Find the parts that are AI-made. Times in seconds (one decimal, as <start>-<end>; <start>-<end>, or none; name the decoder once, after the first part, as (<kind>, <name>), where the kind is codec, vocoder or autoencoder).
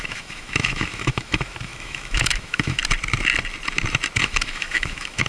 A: 0.0-2.8 (autoencoder, DAC-VAE); 4.2-5.3